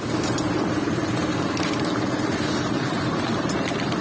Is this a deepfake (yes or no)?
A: yes